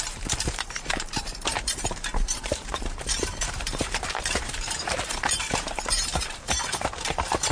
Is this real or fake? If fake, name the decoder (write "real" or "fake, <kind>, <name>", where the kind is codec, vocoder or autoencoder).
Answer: fake, vocoder, BigVGAN v2